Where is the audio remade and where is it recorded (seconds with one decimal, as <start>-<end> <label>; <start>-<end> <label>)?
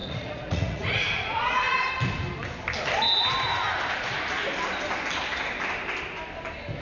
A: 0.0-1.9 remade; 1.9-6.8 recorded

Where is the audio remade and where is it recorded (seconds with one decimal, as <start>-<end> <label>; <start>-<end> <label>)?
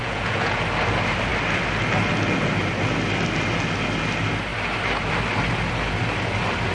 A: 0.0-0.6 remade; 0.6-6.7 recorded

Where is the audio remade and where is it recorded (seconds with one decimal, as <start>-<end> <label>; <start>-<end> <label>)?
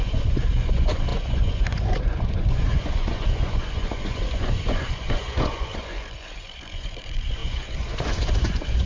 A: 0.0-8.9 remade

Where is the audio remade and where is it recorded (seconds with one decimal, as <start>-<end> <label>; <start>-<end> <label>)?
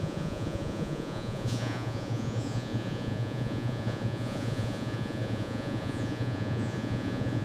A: 0.0-7.4 remade